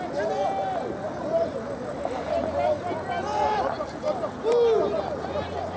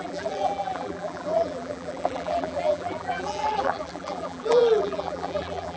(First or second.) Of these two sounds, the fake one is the second